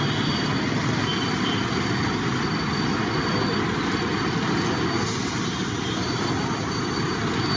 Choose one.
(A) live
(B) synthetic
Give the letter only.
A